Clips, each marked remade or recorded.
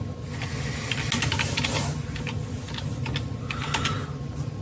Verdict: recorded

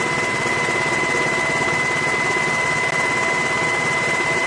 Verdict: recorded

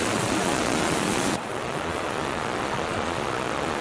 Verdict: remade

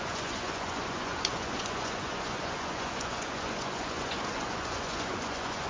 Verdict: remade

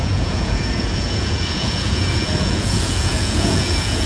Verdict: remade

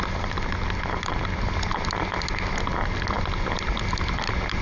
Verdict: recorded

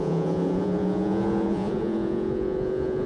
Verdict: remade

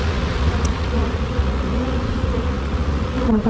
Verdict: remade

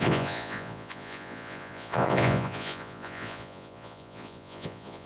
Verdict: remade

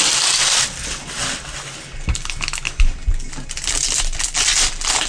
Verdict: recorded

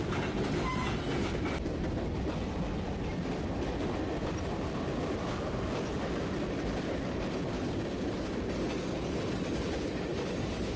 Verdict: recorded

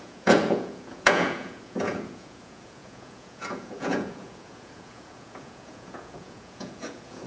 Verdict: remade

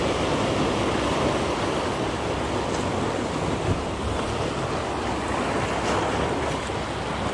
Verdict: recorded